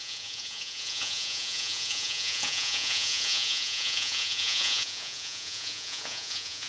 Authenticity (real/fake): fake